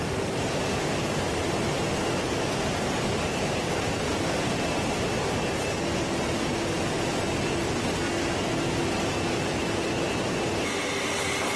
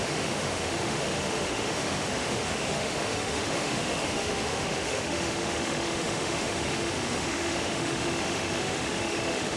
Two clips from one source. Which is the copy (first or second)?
second